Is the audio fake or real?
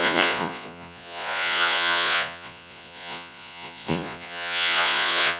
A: fake